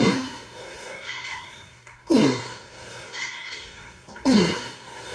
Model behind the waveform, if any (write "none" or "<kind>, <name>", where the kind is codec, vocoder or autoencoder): codec, SNAC